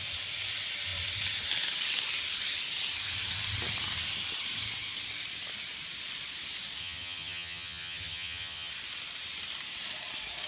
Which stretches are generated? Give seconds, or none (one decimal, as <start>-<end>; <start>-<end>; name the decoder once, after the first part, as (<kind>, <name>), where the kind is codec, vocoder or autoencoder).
6.8-8.7 (vocoder, HiFi-GAN)